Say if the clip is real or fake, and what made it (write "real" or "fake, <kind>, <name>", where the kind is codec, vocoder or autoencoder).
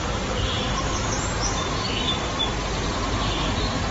real